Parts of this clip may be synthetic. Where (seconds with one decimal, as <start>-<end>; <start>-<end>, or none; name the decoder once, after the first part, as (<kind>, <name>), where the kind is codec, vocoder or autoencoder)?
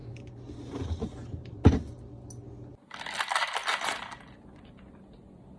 none